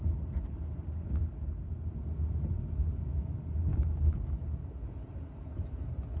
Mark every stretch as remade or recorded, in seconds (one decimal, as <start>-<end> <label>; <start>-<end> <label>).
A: 0.0-6.2 recorded